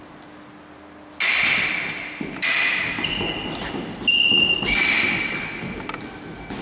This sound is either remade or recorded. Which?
recorded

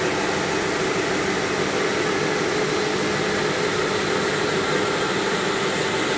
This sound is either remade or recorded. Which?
recorded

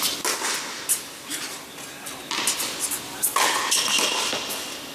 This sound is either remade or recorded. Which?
recorded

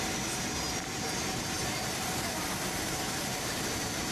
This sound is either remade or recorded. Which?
remade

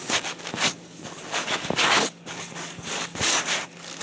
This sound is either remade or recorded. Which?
remade